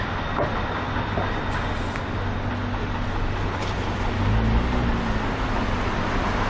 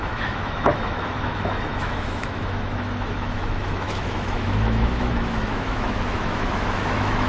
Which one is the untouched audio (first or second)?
first